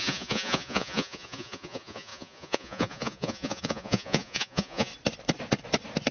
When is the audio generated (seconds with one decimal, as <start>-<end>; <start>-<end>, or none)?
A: 0.0-4.9